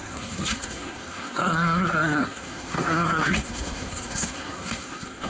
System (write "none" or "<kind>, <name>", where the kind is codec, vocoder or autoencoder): codec, SNAC